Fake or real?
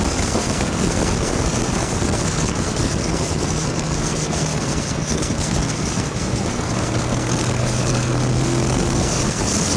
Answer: fake